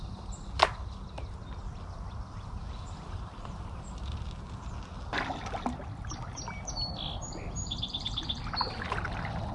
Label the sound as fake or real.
real